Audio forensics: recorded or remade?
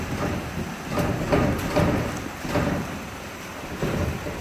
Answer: recorded